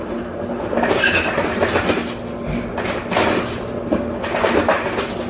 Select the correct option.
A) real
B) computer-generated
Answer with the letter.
A